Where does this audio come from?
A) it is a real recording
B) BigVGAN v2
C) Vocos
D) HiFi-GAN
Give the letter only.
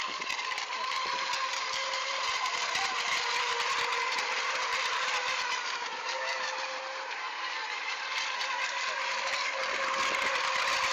A